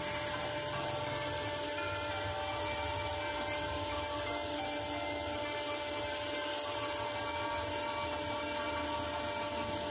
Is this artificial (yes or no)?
no